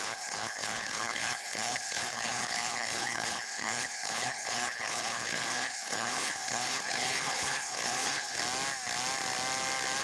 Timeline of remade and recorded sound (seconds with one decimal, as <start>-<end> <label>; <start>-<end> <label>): 0.0-8.4 remade; 8.4-10.0 recorded